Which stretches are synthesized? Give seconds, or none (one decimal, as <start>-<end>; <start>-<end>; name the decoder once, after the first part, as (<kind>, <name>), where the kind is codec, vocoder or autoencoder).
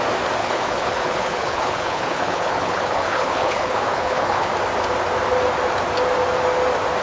0.4-4.5 (codec, HILCodec)